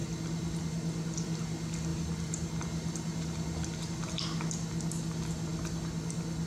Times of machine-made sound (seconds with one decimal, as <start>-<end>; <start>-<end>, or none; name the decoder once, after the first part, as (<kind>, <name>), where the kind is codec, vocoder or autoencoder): 0.0-0.6 (vocoder, BigVGAN v2); 1.9-4.5; 5.5-6.5